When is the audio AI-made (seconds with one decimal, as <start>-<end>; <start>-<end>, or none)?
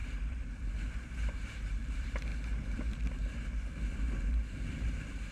0.8-2.3; 3.9-5.3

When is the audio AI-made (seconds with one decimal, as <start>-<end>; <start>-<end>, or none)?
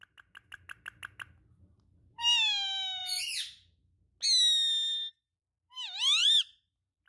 6.2-7.1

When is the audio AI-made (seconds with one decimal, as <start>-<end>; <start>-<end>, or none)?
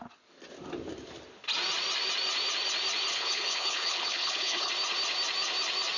3.1-4.7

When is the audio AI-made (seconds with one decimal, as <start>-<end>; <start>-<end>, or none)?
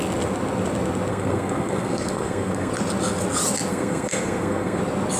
1.1-2.7; 3.7-4.8